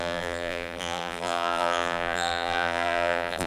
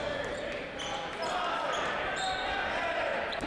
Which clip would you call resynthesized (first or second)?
first